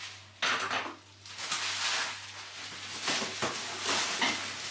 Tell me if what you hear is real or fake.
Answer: real